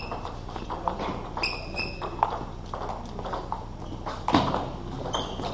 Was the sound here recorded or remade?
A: recorded